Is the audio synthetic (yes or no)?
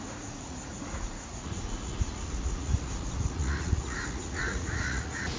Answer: yes